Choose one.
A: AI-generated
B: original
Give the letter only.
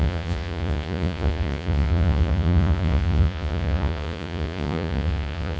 A